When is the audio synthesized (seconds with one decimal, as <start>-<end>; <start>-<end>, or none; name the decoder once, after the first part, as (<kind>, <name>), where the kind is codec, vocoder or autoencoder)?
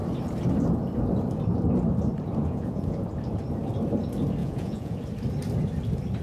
2.4-3.0 (vocoder, Vocos); 4.4-5.0